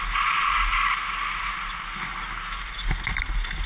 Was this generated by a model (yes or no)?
no